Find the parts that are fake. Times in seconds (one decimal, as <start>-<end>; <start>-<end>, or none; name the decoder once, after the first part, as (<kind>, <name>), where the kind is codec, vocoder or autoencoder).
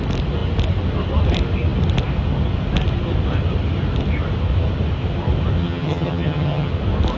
5.6-6.7 (vocoder, HiFi-GAN)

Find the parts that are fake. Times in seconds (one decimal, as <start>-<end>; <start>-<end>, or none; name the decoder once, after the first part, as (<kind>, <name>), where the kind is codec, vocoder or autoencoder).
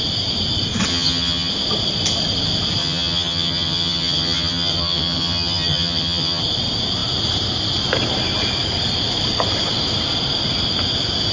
0.9-1.5 (vocoder, HiFi-GAN); 2.8-6.4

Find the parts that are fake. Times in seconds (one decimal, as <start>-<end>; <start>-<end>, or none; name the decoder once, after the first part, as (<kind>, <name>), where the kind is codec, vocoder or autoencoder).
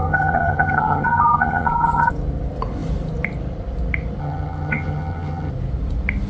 0.0-2.1 (vocoder, HiFi-GAN); 4.2-5.5